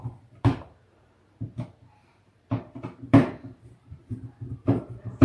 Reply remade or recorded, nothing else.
remade